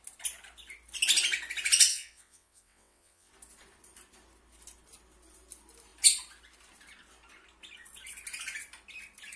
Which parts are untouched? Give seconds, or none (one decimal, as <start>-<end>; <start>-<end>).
0.0-1.9; 3.3-9.4